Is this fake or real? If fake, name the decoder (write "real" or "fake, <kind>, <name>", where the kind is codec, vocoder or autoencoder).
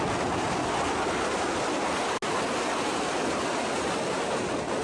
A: real